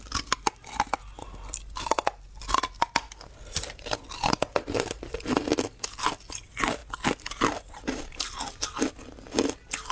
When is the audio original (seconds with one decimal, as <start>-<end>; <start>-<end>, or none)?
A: 0.0-9.9